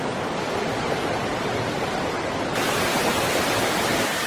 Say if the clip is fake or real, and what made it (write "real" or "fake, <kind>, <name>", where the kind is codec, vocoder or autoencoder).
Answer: fake, vocoder, BigVGAN v2